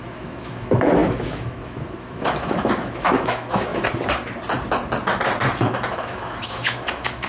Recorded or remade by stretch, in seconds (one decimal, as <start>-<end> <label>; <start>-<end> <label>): 0.0-3.7 remade; 3.7-5.6 recorded; 5.6-7.3 remade